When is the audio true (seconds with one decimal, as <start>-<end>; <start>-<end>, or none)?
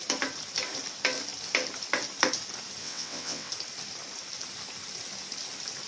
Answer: 0.0-2.8; 3.5-5.9